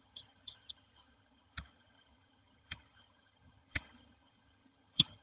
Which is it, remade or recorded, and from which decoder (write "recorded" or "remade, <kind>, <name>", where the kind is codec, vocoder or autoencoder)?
remade, vocoder, HiFi-GAN